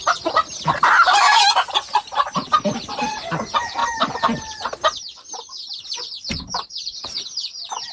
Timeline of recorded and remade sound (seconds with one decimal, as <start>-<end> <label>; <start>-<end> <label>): 0.0-5.1 recorded; 5.1-7.1 remade; 7.1-7.9 recorded